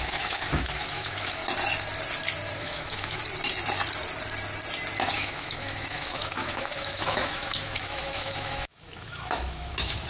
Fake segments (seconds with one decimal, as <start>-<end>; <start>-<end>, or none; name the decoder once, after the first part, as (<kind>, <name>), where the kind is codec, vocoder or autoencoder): 0.0-1.4 (autoencoder, DAC-VAE); 2.6-3.2; 5.1-10.1